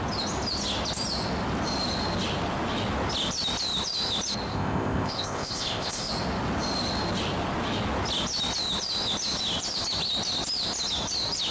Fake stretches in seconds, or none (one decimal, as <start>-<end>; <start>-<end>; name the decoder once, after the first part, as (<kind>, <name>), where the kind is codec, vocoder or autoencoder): 4.5-6.1 (codec, ZipCodec)